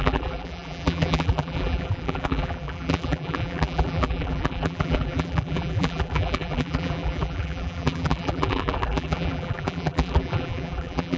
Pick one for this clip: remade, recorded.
remade